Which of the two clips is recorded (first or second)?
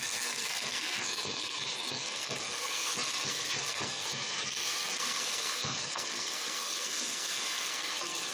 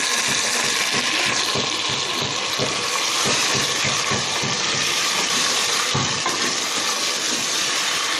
second